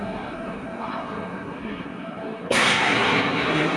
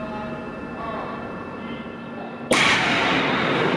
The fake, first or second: first